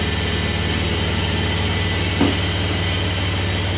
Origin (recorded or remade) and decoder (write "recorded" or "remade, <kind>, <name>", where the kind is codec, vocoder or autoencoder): recorded